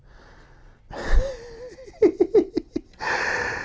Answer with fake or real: real